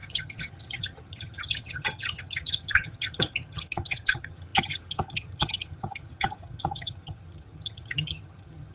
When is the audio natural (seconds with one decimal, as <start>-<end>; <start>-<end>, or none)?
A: none